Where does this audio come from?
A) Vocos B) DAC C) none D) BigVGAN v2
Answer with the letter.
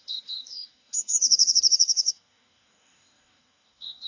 B